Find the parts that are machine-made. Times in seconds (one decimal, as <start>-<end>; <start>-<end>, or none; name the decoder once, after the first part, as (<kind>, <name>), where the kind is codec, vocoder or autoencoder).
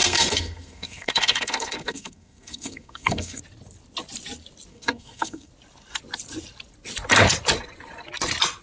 0.0-3.4 (codec, SNAC); 4.7-5.5